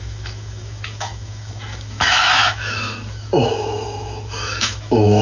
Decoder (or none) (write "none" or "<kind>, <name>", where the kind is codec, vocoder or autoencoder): autoencoder, DAC-VAE